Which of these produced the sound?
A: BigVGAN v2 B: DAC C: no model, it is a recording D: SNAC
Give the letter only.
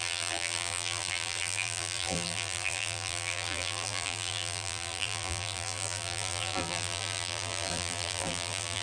A